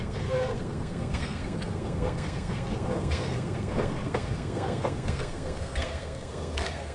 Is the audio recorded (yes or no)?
no